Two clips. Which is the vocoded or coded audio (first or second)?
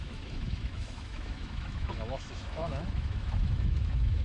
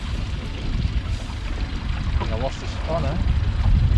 first